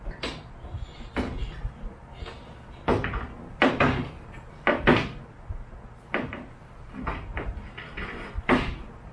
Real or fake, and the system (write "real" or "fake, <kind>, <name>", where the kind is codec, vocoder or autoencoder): real